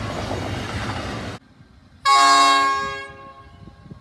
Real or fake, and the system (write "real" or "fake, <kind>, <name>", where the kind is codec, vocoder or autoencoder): real